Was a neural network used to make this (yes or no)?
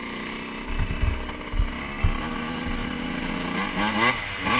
no